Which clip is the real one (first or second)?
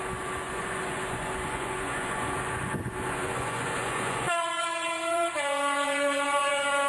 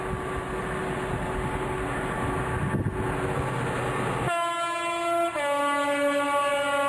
second